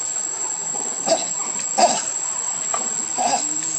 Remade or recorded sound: recorded